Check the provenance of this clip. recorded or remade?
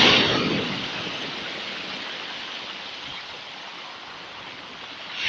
recorded